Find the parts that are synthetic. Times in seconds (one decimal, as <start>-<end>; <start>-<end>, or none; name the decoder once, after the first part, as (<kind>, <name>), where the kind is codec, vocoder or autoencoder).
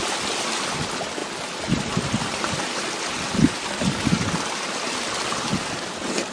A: none